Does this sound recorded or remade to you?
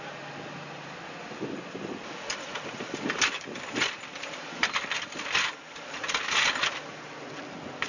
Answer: recorded